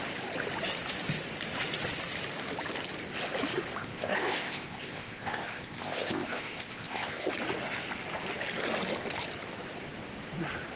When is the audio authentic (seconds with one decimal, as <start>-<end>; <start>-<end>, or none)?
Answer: 0.0-3.8; 7.3-10.8